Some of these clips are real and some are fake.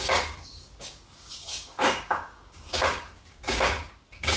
fake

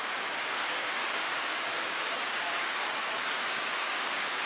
fake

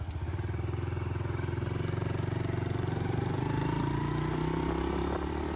real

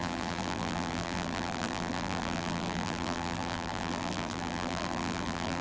fake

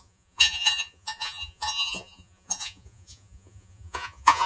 fake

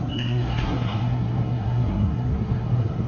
fake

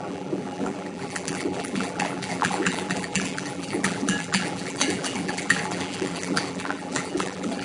fake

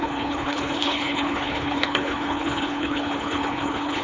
fake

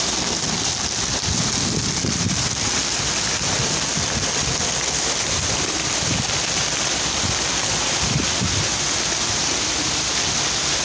real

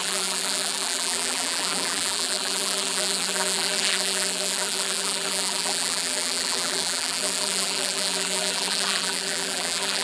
fake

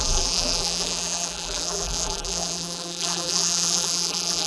fake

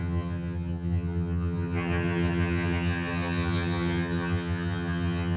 fake